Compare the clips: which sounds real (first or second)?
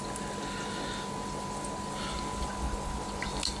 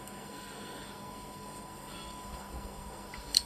first